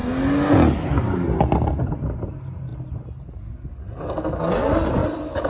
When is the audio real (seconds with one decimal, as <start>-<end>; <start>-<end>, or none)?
0.0-5.5